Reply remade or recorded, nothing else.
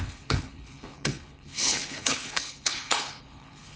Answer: remade